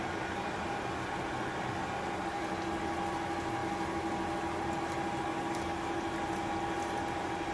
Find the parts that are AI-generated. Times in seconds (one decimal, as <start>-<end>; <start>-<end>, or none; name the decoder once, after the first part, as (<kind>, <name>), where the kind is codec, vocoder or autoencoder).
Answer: none